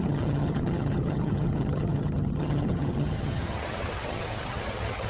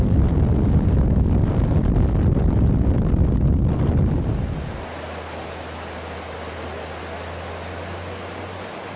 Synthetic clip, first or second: first